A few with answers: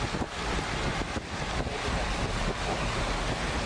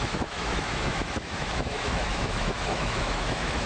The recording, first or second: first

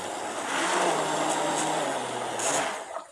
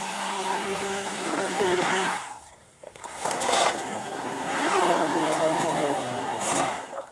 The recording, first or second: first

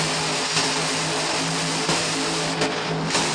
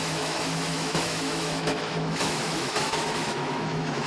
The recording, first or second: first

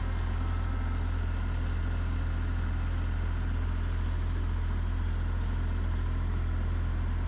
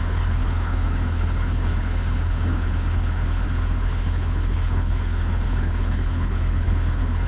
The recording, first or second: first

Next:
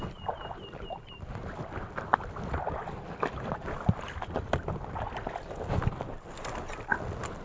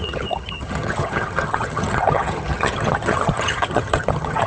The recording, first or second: first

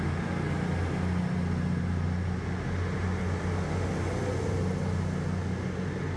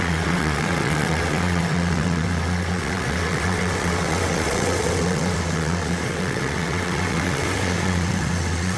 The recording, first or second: first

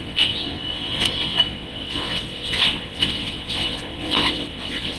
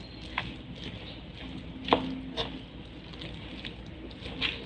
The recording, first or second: second